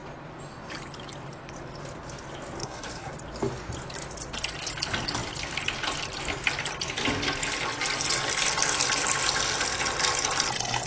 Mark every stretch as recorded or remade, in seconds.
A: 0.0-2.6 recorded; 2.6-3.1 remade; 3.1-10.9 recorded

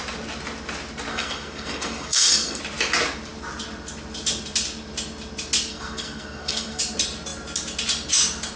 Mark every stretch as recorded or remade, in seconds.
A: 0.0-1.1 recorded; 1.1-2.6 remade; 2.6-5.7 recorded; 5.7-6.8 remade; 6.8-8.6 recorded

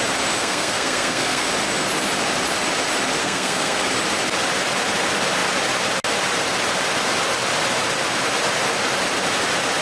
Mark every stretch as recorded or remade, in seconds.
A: 0.0-0.4 recorded; 0.4-1.5 remade; 1.5-3.2 recorded; 3.2-3.8 remade; 3.8-9.8 recorded

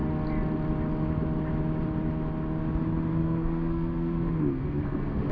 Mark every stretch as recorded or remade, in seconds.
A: 0.0-3.2 recorded; 3.2-5.3 remade

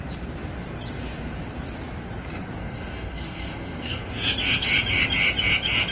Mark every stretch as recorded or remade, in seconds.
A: 0.0-2.6 recorded; 2.6-4.1 remade; 4.1-5.9 recorded

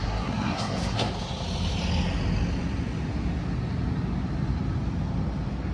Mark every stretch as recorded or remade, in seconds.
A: 0.0-1.1 remade; 1.1-5.7 recorded

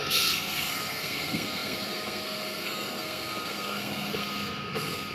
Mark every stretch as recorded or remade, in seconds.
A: 0.0-5.1 remade

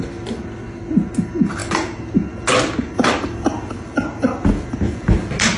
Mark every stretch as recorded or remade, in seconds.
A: 0.0-5.6 recorded